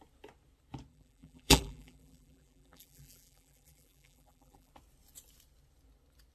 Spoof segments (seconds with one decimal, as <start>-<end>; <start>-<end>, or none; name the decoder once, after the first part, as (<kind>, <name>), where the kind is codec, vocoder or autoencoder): 0.9-4.7 (vocoder, BigVGAN v2)